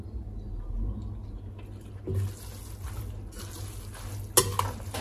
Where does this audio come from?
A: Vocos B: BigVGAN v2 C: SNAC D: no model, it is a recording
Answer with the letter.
D